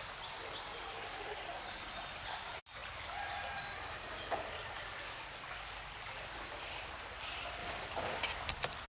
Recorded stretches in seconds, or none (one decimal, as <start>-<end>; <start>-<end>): 0.0-8.9